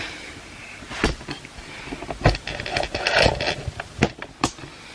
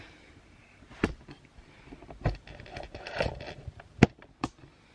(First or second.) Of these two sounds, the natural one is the first